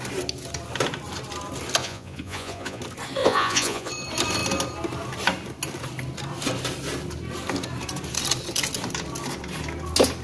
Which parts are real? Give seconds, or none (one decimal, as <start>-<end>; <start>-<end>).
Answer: 0.0-1.8; 2.8-3.2; 3.9-10.2